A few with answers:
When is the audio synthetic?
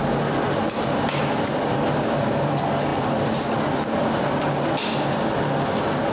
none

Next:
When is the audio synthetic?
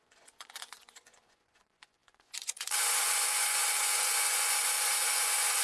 0.0-5.6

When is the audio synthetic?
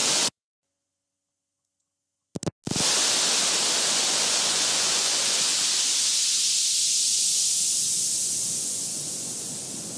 0.0-2.3; 3.9-5.5; 6.8-10.0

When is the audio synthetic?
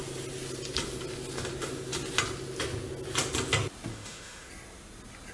3.9-4.5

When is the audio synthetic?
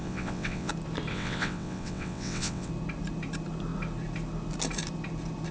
0.0-0.7; 1.1-2.7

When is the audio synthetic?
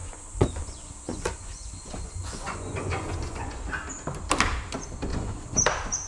0.0-3.7; 5.1-5.6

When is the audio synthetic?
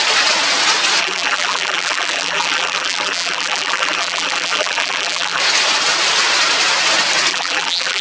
1.0-5.4; 7.3-8.0